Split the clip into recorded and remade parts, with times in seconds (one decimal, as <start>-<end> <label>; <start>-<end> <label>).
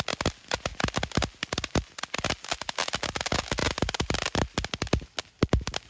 0.0-5.9 recorded